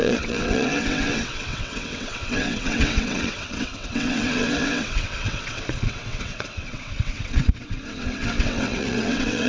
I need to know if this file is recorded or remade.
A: remade